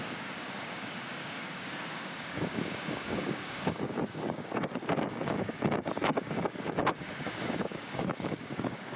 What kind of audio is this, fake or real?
fake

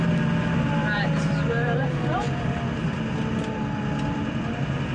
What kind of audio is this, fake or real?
real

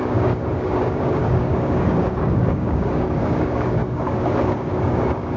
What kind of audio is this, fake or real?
fake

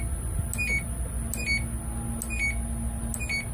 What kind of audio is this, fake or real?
real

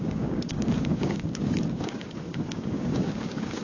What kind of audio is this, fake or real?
fake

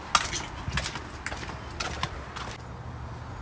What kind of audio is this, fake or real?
real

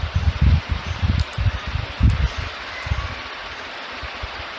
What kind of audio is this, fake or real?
real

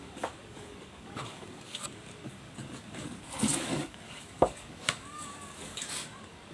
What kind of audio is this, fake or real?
fake